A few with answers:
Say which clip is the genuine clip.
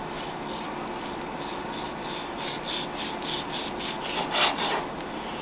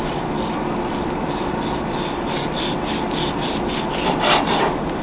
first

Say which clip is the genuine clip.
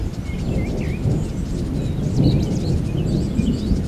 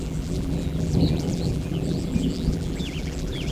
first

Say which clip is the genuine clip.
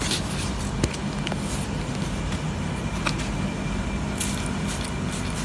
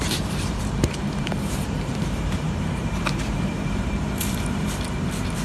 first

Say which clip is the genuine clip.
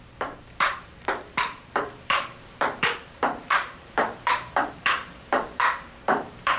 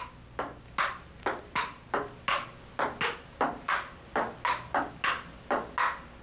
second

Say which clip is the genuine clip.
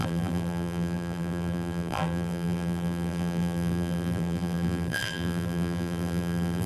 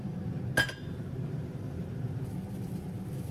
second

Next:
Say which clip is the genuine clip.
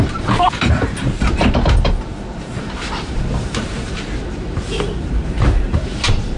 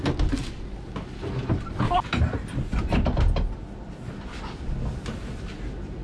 second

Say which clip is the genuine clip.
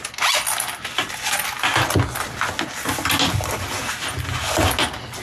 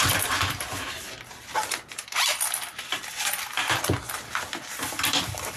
first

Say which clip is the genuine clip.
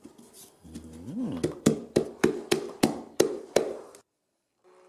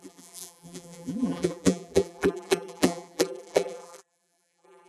first